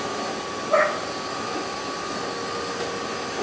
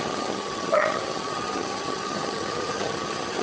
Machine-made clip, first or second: second